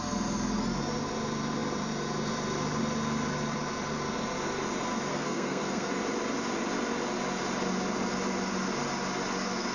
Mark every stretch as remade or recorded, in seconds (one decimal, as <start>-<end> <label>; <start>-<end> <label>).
0.0-5.1 recorded; 5.1-5.9 remade; 5.9-9.7 recorded